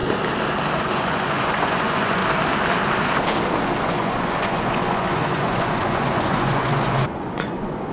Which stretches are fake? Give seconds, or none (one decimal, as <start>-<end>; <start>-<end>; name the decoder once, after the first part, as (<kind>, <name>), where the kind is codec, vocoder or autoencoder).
0.8-2.2 (vocoder, Vocos); 3.8-7.9